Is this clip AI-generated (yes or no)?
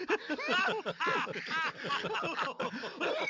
no